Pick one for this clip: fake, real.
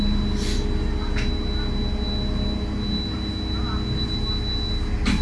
real